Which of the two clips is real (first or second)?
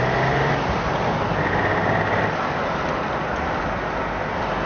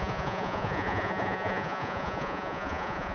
first